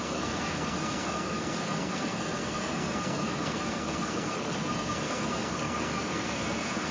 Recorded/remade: remade